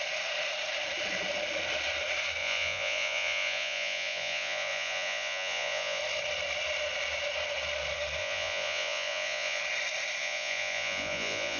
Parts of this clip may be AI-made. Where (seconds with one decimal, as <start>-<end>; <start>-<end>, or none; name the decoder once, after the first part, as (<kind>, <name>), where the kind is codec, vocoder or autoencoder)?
2.4-6.0 (vocoder, Vocos); 8.2-9.6; 10.2-11.6

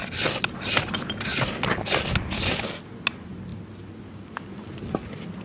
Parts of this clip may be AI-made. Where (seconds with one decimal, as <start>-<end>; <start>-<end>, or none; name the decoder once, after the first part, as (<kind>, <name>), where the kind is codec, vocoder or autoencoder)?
0.0-1.5 (vocoder, BigVGAN v2)

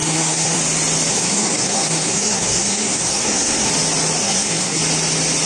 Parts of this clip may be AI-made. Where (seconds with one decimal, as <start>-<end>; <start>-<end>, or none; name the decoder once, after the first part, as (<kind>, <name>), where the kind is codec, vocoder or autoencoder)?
0.0-0.6 (codec, SNAC); 1.1-3.7; 4.2-4.8

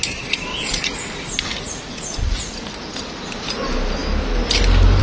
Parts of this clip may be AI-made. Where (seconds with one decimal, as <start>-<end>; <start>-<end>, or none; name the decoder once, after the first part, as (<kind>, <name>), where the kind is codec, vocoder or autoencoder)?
0.5-1.0 (vocoder, Vocos); 1.5-2.6

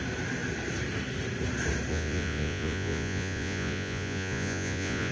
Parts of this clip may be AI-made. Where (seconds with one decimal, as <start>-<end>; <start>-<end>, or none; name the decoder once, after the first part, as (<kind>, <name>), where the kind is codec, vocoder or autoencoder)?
1.9-5.1 (vocoder, Vocos)